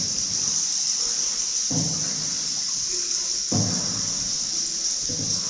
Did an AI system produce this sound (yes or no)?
no